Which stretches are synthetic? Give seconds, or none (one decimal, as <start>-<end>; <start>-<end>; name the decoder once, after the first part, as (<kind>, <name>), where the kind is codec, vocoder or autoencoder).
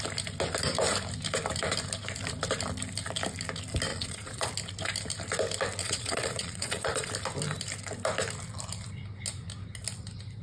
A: 3.9-4.5 (vocoder, Vocos); 5.8-7.1